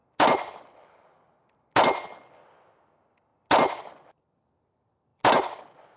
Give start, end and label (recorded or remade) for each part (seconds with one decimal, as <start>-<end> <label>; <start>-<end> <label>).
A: 0.0-6.0 recorded